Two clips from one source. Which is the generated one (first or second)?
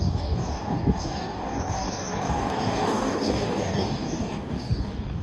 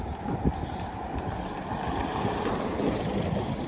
first